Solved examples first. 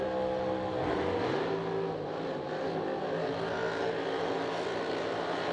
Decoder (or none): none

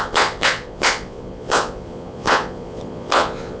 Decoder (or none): vocoder, Vocos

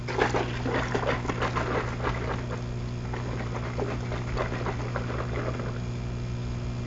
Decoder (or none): none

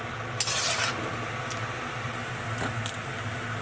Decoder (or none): none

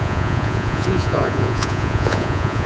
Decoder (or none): vocoder, Vocos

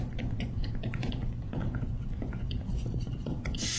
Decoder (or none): vocoder, Vocos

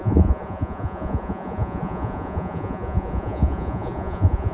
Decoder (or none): vocoder, Vocos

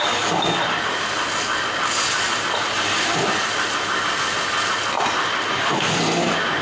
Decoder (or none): none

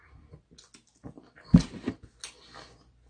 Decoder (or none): none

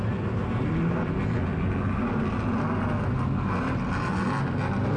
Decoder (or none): none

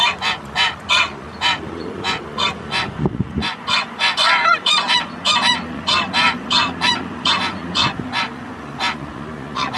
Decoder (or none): vocoder, Vocos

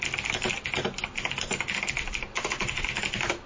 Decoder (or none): none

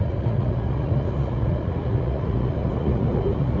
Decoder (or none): vocoder, Vocos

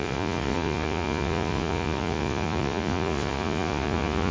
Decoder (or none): vocoder, Vocos